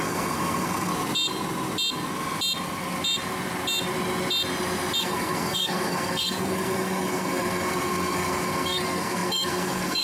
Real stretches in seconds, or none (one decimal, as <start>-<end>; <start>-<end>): 0.9-5.0

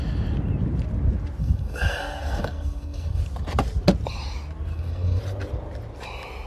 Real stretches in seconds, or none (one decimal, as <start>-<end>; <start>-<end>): 0.0-1.4; 3.2-4.7; 5.2-6.5

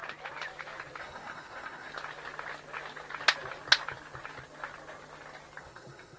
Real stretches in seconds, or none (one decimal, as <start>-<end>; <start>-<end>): 0.0-1.0; 1.9-5.6

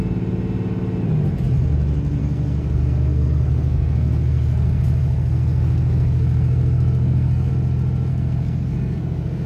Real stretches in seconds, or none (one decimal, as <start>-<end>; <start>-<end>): 0.0-2.2; 7.5-8.1

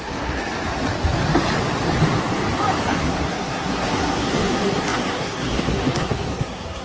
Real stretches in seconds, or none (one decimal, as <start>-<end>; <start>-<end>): 0.4-3.0